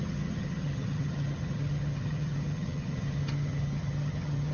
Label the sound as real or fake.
fake